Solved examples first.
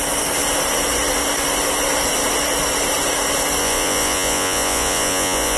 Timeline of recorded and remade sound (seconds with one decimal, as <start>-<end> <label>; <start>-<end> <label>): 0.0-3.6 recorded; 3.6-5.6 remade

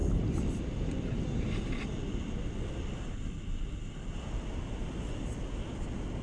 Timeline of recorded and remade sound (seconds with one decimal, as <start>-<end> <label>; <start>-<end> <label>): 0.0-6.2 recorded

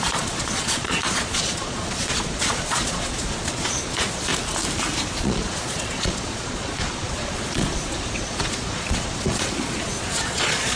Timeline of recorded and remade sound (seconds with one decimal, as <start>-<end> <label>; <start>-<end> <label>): 0.0-4.3 remade; 4.3-5.2 recorded; 5.2-10.8 remade

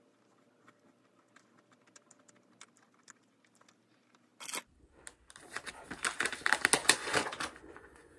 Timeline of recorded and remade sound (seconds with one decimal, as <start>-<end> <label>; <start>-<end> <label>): 0.0-6.8 recorded; 6.8-8.2 remade

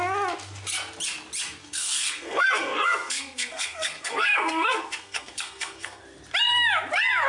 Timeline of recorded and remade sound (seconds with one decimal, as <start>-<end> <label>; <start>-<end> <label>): 0.0-1.6 recorded; 1.6-6.0 remade; 6.0-7.3 recorded

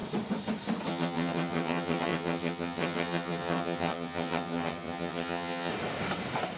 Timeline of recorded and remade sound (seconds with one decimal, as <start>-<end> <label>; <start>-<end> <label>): 0.0-0.9 recorded; 0.9-5.7 remade; 5.7-6.6 recorded

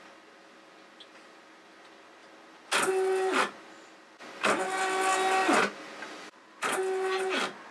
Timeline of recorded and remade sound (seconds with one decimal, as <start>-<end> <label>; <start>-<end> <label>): 0.0-7.7 recorded